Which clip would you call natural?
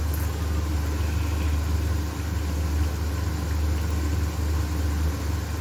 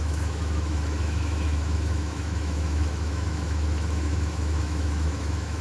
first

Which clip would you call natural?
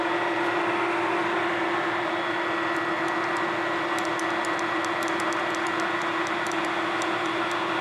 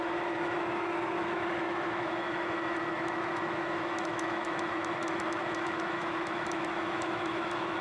first